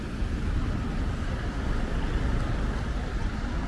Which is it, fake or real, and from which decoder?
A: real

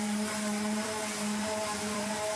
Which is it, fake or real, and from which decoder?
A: fake, vocoder, BigVGAN v2